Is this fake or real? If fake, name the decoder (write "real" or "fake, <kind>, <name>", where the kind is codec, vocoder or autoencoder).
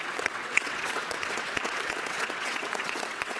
fake, vocoder, WaveNeXt